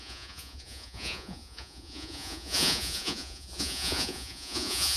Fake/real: fake